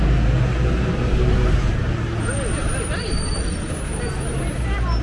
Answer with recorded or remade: recorded